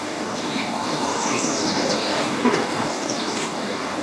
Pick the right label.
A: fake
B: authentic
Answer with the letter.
A